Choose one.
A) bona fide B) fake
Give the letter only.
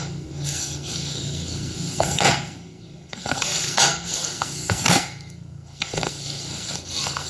B